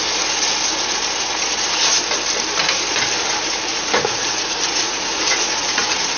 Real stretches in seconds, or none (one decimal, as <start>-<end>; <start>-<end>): 0.0-3.7